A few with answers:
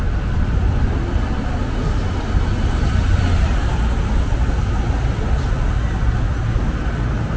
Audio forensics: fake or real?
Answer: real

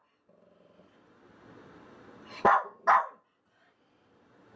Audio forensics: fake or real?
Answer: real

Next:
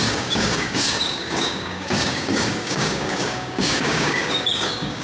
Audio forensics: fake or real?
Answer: fake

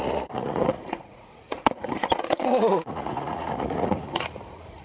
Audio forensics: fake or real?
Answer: fake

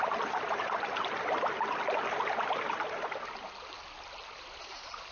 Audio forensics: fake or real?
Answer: real